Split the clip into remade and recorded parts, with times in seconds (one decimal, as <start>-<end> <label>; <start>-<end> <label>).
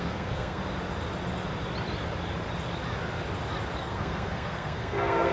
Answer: 0.0-0.6 remade; 0.6-3.8 recorded; 3.8-5.3 remade